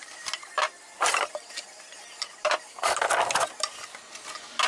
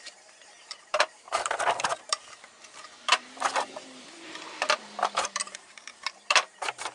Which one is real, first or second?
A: first